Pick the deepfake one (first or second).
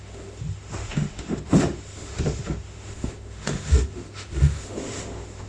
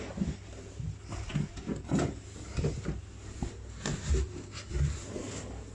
first